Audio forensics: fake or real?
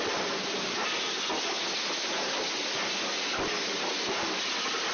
real